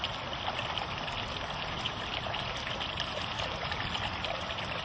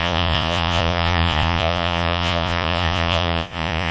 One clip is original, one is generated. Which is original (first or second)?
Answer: first